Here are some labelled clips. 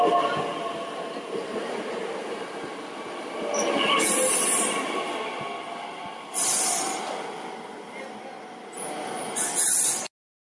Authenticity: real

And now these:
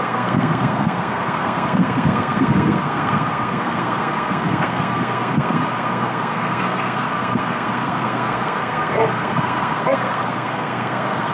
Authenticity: fake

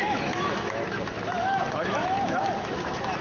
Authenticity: fake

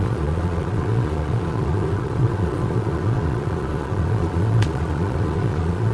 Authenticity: fake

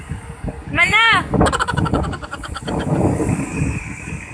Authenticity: fake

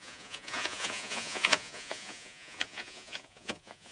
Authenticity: fake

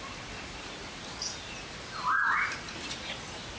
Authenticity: real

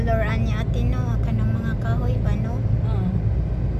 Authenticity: real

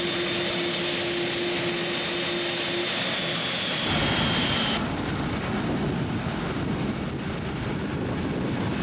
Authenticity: real